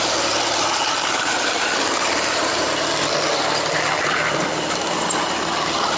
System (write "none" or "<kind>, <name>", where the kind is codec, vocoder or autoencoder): none